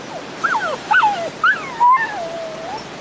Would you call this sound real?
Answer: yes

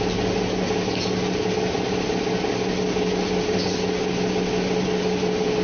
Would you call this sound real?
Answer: yes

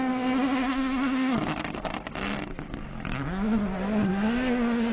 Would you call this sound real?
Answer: yes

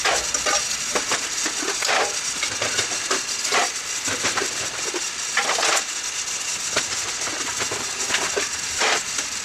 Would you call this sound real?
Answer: yes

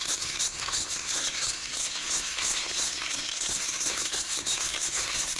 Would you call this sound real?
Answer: no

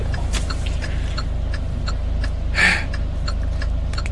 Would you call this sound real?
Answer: yes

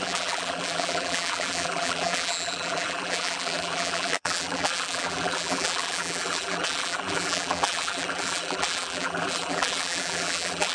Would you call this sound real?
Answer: no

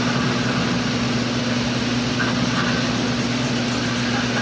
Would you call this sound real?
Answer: yes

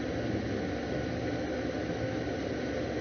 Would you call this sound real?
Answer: yes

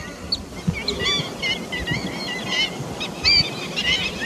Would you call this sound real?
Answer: yes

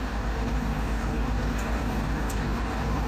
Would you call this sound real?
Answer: no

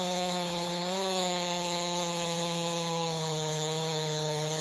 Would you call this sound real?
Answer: no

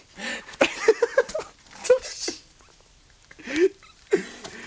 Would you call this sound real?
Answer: yes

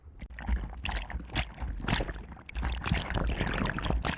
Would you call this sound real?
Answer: yes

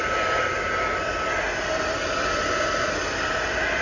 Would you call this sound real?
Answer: yes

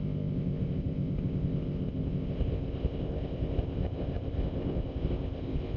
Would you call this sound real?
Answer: no